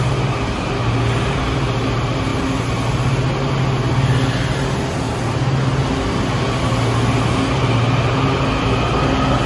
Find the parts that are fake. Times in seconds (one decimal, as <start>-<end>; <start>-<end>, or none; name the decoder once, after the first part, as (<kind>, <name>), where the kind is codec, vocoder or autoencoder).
none